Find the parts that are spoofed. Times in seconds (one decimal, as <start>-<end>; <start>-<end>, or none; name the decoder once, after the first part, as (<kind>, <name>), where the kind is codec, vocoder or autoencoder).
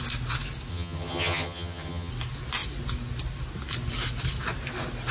0.7-2.1 (vocoder, HiFi-GAN)